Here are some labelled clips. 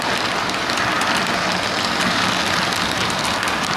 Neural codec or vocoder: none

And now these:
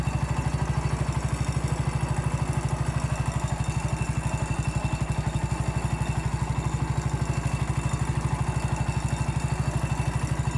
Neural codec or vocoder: none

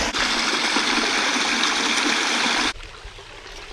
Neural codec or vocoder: none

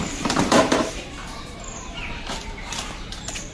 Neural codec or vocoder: vocoder, BigVGAN v2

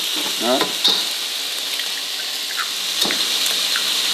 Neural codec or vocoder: none